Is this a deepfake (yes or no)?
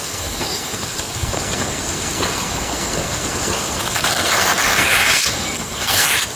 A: yes